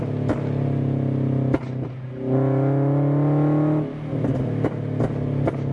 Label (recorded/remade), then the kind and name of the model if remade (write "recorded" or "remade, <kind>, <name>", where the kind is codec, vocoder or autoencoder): recorded